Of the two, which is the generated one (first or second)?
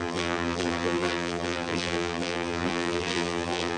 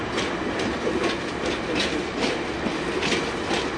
first